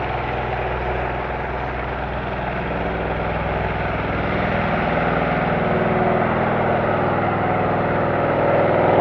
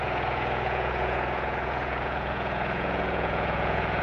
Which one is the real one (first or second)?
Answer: first